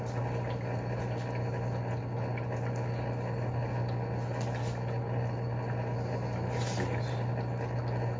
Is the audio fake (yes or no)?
no